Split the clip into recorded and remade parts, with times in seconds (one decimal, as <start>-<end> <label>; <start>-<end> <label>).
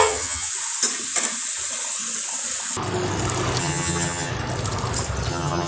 0.0-0.5 remade; 0.5-3.6 recorded; 3.6-4.3 remade; 4.3-5.3 recorded; 5.3-5.7 remade